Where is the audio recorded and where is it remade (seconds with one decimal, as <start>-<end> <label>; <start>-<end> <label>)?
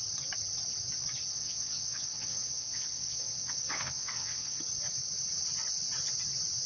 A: 0.0-1.3 recorded; 1.3-4.6 remade; 4.6-6.7 recorded